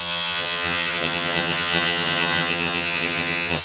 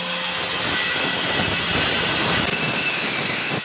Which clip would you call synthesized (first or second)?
first